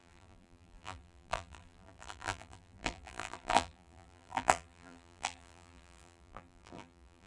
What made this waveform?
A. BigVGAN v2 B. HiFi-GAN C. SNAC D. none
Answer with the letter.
A